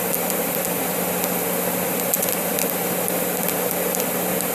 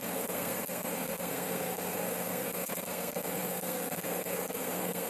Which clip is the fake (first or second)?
second